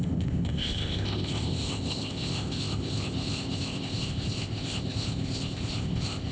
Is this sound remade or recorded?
remade